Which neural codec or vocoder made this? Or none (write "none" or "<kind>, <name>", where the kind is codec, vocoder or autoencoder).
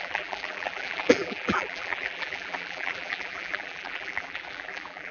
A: vocoder, BigVGAN v2